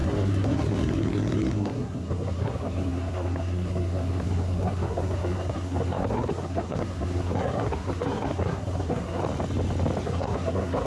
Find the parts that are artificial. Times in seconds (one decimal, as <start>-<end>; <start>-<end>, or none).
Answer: 0.0-9.2; 10.0-10.9